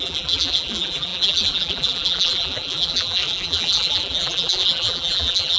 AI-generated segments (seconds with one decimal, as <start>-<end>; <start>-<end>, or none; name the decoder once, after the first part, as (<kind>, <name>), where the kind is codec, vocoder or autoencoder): 0.0-5.6 (vocoder, BigVGAN v2)